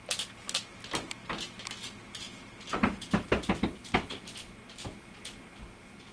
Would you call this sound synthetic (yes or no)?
no